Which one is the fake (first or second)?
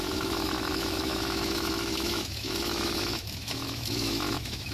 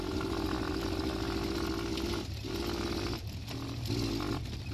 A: first